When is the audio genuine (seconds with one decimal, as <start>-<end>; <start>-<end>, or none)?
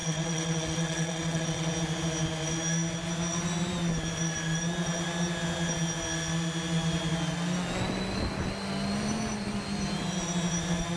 1.7-11.0